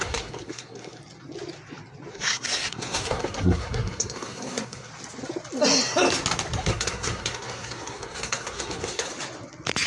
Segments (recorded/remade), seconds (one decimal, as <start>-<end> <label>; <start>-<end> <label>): 0.0-1.0 remade; 1.0-2.1 recorded; 2.1-4.9 remade; 4.9-6.6 recorded; 6.6-9.1 remade; 9.1-9.9 recorded